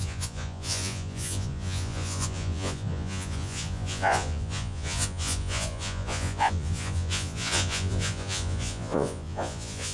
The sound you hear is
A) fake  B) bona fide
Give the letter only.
A